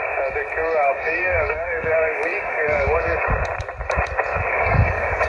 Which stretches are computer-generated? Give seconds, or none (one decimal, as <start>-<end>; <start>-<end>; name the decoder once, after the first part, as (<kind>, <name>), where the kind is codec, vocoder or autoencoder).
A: 0.8-3.2 (codec, DAC); 4.3-5.3